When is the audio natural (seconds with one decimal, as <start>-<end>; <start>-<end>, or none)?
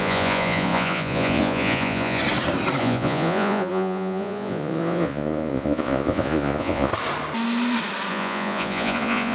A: 2.2-2.8; 6.9-8.1